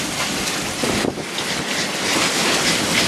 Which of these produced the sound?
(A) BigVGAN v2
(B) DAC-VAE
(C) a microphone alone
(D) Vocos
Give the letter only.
C